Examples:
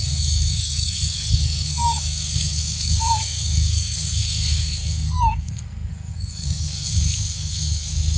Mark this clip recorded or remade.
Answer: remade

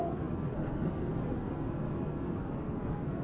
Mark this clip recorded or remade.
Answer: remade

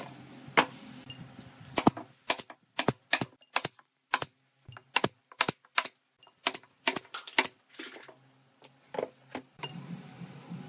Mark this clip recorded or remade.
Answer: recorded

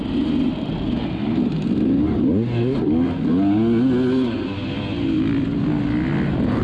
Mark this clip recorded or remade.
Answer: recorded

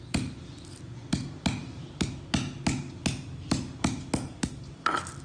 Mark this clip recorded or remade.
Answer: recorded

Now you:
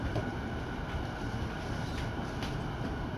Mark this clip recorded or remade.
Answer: recorded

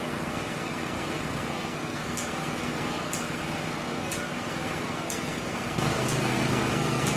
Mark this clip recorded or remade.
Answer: remade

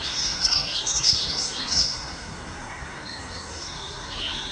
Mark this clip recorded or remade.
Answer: remade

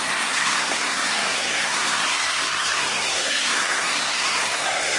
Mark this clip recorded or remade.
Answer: remade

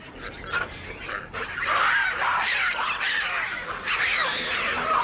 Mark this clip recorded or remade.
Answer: recorded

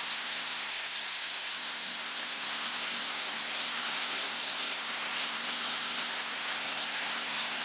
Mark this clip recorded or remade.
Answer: remade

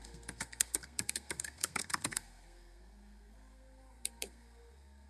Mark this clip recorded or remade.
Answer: remade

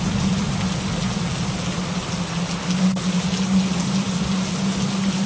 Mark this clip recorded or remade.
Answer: recorded